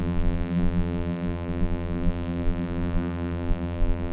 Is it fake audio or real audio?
fake